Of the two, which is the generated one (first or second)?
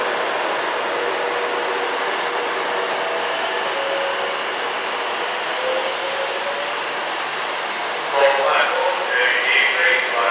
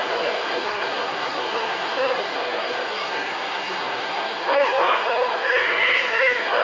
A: second